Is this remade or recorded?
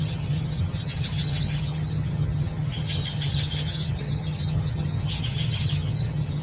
remade